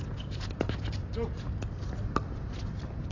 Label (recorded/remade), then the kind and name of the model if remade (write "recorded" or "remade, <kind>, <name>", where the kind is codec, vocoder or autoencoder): recorded